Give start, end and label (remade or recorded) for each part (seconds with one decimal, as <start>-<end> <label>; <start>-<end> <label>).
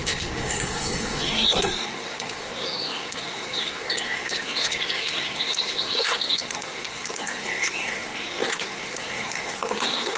0.0-10.2 remade